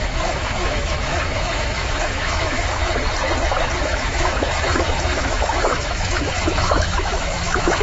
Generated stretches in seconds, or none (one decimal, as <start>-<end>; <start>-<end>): 0.0-2.8; 3.8-7.8